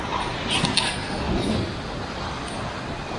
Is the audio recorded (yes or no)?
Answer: yes